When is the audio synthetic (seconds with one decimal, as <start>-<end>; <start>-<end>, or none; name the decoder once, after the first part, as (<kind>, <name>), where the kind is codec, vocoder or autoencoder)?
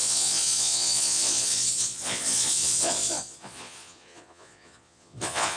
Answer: 0.0-5.6 (vocoder, Vocos)